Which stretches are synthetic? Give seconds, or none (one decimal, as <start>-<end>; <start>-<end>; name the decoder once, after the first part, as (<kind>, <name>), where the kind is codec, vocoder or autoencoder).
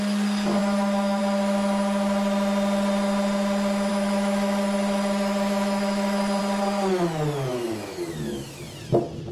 0.6-1.2 (autoencoder, DAC-VAE); 3.9-6.4; 7.5-8.6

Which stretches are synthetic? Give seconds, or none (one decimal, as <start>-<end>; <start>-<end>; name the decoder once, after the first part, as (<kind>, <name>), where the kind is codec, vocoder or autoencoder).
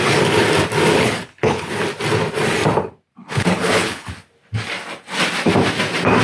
0.9-1.7 (codec, HILCodec); 3.2-4.1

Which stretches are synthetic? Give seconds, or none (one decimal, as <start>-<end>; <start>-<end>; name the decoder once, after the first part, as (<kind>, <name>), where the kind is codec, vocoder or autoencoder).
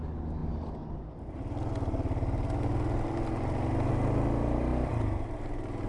none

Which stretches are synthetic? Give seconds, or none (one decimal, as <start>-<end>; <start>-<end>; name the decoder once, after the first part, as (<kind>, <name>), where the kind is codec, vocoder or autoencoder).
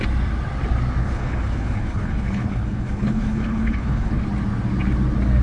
1.0-4.2 (codec, HILCodec)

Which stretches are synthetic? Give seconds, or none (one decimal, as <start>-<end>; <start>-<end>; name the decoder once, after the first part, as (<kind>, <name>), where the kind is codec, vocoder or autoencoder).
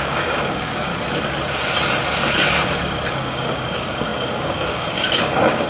0.0-0.9 (codec, DAC); 3.1-5.7